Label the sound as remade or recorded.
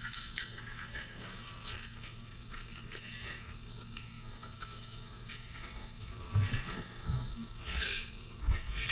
remade